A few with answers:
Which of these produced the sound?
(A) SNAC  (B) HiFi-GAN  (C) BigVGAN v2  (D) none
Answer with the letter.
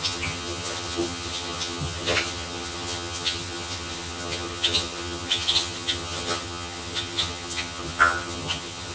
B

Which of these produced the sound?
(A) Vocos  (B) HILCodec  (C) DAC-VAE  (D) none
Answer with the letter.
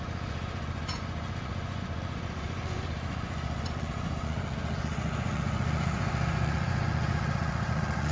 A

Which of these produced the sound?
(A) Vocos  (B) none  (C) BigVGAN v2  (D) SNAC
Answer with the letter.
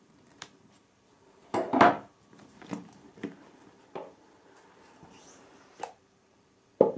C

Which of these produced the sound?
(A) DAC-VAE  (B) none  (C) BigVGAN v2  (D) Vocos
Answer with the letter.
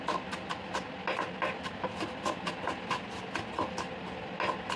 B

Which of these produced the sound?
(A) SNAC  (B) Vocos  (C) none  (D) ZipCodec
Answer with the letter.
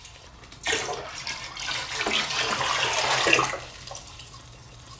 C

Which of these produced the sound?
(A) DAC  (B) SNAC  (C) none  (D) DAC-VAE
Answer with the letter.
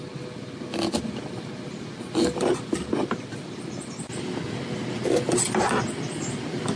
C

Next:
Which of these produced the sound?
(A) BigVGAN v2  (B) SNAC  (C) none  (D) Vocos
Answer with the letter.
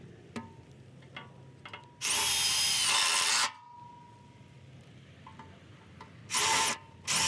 C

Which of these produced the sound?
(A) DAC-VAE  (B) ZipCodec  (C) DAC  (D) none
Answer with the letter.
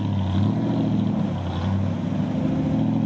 D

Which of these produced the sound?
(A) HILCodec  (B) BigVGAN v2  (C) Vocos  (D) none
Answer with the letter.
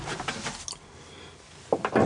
D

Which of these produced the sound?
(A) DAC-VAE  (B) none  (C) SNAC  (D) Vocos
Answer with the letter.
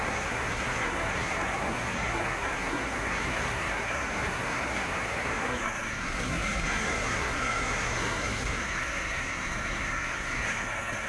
C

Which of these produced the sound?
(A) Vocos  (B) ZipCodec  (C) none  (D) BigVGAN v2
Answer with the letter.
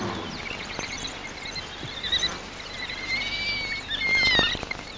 C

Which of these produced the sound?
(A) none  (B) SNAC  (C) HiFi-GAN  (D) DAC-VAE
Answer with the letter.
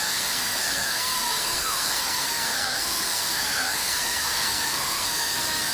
B